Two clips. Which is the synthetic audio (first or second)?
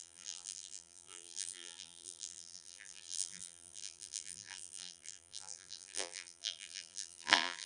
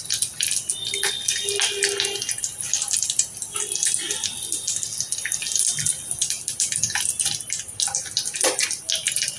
first